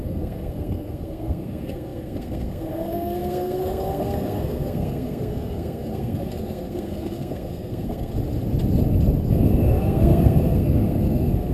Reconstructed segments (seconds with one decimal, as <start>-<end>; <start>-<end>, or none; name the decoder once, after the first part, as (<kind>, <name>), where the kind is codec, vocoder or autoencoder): 0.0-8.1 (codec, SNAC); 9.3-11.5